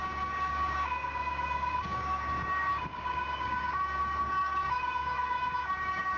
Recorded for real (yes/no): no